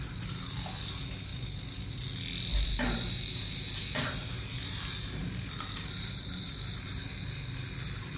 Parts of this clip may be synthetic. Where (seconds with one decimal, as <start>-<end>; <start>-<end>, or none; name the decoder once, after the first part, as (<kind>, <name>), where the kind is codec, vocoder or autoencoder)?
2.5-7.1 (vocoder, BigVGAN v2)